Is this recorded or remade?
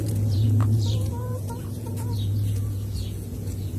remade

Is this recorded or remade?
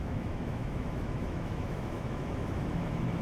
remade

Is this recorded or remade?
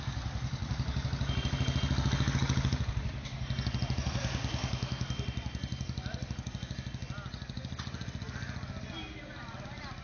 recorded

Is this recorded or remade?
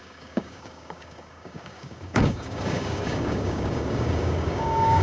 remade